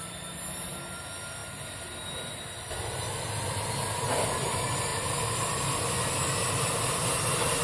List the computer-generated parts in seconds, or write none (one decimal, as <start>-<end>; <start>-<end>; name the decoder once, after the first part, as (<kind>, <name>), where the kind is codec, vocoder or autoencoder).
0.0-7.6 (vocoder, BigVGAN v2)